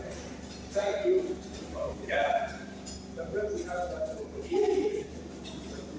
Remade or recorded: remade